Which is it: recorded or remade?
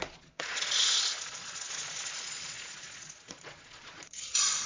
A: remade